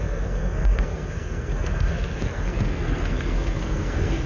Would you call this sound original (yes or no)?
no